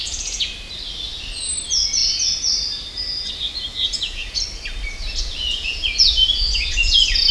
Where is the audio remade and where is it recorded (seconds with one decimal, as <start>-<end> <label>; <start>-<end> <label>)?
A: 0.0-0.5 remade; 0.5-3.7 recorded; 3.7-4.4 remade; 4.4-5.0 recorded; 5.0-7.3 remade